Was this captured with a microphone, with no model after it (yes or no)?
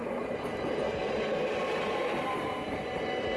yes